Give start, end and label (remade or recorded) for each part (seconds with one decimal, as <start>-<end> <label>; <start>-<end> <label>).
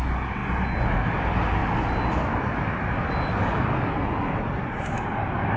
0.0-5.6 recorded